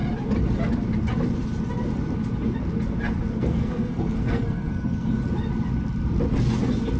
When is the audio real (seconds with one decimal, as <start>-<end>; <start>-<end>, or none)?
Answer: 0.0-3.3; 5.1-7.0